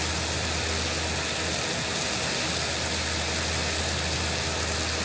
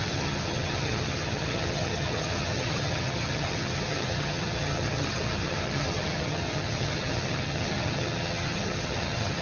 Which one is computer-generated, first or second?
second